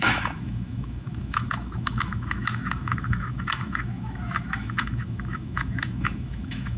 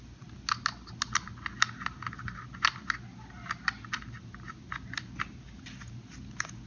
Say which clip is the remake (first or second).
first